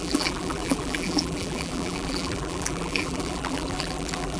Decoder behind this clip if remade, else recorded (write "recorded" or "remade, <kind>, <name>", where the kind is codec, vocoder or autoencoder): remade, vocoder, BigVGAN v2